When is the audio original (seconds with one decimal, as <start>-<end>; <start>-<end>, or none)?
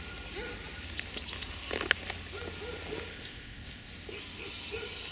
0.0-3.1; 3.9-5.1